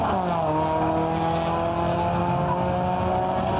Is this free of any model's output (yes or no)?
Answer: yes